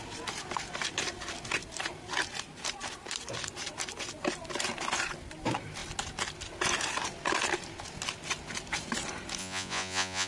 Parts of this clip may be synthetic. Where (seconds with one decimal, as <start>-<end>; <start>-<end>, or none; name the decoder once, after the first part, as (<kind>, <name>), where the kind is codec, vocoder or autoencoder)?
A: 9.4-10.3 (vocoder, Vocos)